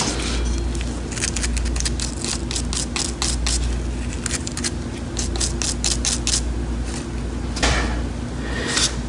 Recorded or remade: recorded